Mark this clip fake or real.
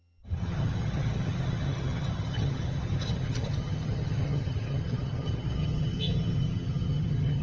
fake